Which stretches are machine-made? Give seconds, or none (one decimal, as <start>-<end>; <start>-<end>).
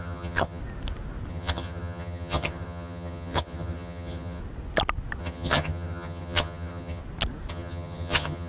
0.0-0.6; 1.3-4.4; 5.2-7.0; 7.5-8.5